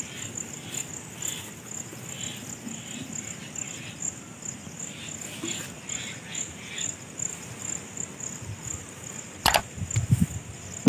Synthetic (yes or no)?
no